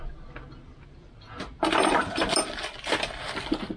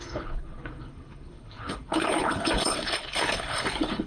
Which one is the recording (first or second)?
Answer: first